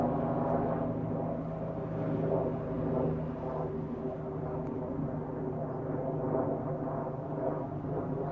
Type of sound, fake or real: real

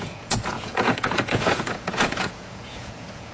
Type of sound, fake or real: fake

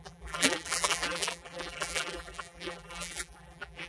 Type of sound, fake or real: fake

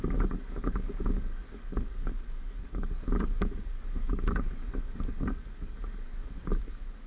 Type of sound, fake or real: fake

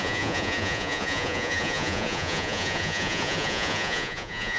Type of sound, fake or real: fake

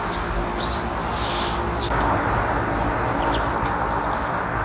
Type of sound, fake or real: real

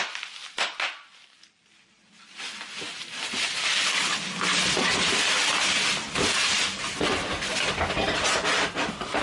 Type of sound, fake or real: real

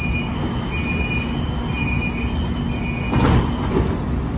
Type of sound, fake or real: real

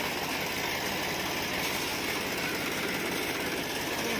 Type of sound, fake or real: real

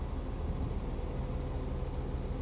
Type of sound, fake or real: real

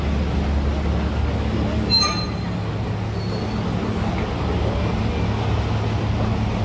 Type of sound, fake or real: real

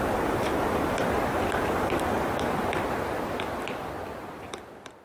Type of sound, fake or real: fake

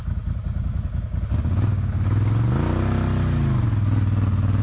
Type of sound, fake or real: real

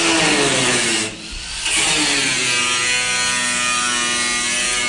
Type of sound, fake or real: real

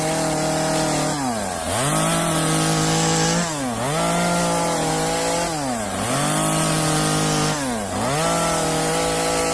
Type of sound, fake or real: real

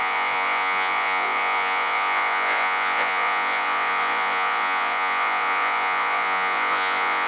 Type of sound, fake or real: fake